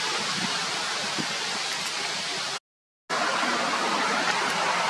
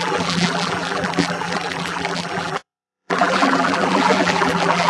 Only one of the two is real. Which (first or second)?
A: first